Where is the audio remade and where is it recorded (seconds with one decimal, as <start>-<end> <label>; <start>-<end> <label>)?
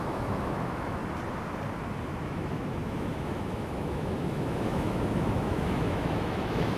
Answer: 0.0-1.0 remade; 1.0-2.3 recorded; 2.3-6.8 remade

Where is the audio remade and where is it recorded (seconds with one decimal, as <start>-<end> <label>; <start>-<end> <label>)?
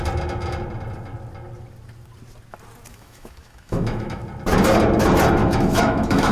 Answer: 0.0-2.9 recorded; 2.9-4.2 remade; 4.2-5.4 recorded; 5.4-6.3 remade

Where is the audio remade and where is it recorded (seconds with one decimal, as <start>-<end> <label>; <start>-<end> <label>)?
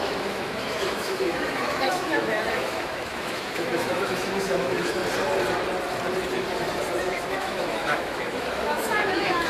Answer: 0.0-5.0 remade; 5.0-7.0 recorded; 7.0-9.5 remade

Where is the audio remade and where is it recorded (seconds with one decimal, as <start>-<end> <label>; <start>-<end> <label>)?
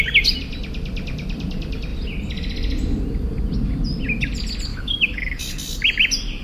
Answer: 0.0-4.7 recorded; 4.7-5.4 remade; 5.4-6.4 recorded